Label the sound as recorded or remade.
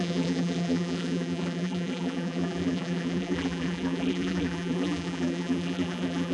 remade